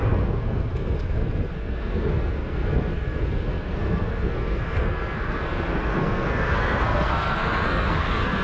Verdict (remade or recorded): remade